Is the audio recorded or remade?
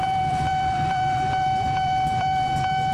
remade